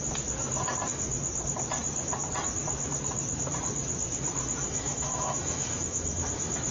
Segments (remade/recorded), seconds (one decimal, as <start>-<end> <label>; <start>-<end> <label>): 0.0-4.6 recorded; 4.6-6.3 remade; 6.3-6.7 recorded